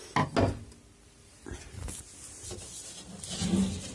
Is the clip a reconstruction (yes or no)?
no